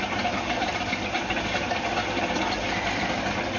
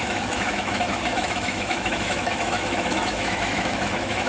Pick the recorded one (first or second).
first